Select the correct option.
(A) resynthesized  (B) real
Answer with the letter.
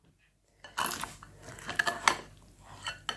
B